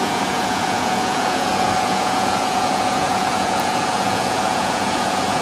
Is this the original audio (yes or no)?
no